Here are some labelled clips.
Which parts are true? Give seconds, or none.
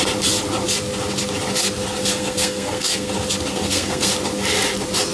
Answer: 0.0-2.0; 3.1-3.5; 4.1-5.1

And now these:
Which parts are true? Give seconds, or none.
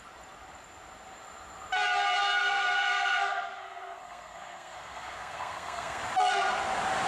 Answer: 0.0-2.4; 6.0-7.1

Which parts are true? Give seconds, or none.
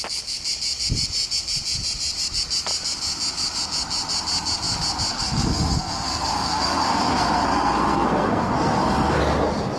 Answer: 0.0-5.1; 9.2-9.8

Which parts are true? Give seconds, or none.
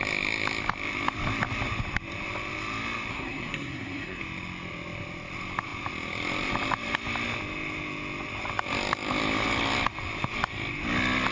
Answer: 0.0-3.1; 4.2-11.3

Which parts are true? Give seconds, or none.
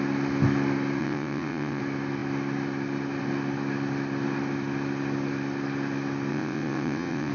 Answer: 0.0-1.0; 1.8-6.3